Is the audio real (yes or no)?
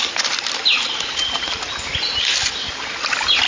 yes